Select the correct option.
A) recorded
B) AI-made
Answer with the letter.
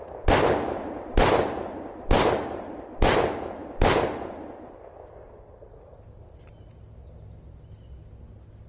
A